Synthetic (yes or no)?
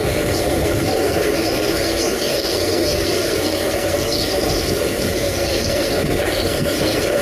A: yes